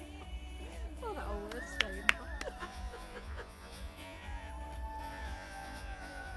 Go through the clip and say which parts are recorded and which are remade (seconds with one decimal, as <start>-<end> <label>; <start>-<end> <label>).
0.0-2.6 recorded; 2.6-4.5 remade; 4.5-5.0 recorded; 5.0-6.4 remade